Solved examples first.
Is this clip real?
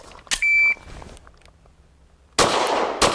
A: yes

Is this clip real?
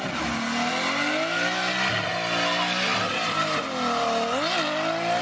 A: yes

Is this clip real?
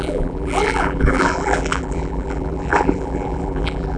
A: no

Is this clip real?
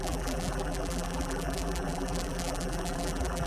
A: no